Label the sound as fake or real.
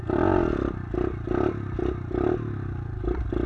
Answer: real